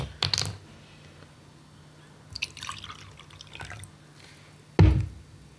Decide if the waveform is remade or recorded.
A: recorded